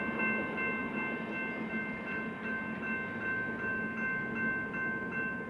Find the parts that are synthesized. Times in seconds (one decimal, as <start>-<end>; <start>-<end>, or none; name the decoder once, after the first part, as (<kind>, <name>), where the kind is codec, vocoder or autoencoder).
none